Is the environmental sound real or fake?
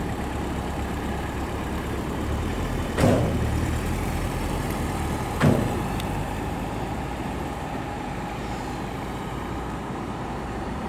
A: fake